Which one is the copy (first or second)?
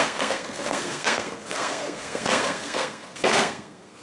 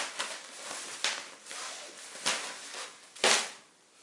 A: first